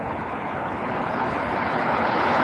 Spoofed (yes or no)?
yes